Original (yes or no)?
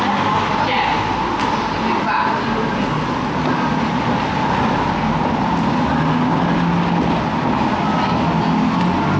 yes